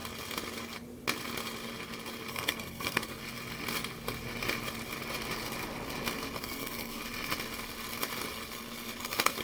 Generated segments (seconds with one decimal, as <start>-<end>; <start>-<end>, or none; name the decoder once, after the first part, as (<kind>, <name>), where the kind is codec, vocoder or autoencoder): 2.3-3.2 (codec, SNAC); 6.4-7.0; 9.0-9.4